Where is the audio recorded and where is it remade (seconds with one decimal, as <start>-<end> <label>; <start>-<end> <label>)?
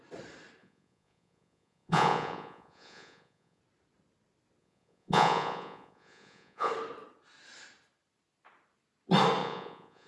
0.0-0.6 recorded; 0.6-3.6 remade; 3.6-4.6 recorded; 4.6-6.7 remade; 6.7-9.4 recorded; 9.4-10.1 remade